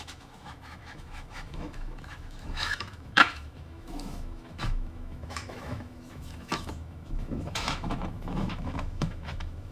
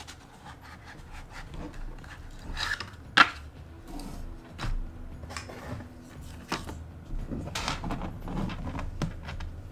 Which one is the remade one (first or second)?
first